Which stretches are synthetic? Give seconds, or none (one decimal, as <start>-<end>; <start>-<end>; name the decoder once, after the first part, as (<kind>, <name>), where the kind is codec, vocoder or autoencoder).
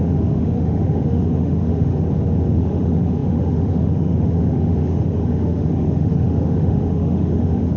0.0-1.9 (autoencoder, DAC-VAE); 2.5-7.8